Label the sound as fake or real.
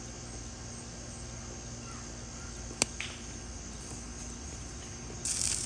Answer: real